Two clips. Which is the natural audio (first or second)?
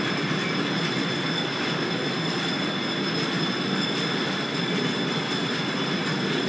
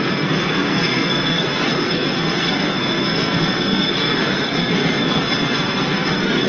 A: first